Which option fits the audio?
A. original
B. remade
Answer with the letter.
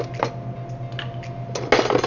A